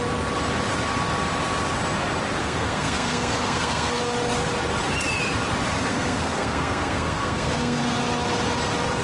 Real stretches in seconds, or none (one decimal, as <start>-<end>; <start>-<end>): 0.0-2.4; 4.0-5.9; 7.8-9.0